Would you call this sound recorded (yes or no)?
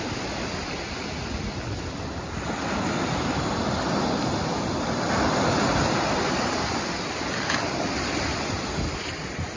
yes